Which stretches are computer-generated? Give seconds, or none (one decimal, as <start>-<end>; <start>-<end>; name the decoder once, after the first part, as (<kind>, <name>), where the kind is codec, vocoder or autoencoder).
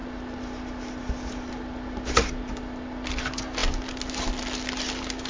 none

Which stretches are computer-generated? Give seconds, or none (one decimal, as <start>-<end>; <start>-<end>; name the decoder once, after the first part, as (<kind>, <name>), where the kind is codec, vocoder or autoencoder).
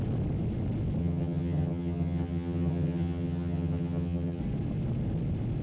1.0-4.4 (vocoder, HiFi-GAN)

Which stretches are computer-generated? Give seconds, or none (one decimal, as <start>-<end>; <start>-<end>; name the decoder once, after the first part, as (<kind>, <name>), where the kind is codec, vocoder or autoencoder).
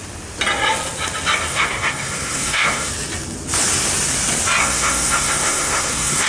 1.5-2.9 (codec, SNAC); 4.6-6.3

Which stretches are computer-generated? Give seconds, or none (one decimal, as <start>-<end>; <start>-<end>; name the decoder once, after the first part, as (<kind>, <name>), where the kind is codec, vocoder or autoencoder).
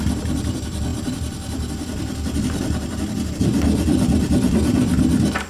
0.0-5.5 (vocoder, BigVGAN v2)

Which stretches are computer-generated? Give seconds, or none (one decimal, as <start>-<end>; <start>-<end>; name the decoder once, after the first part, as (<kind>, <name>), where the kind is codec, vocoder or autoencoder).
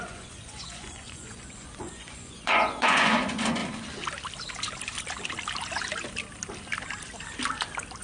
0.0-3.6 (vocoder, Vocos)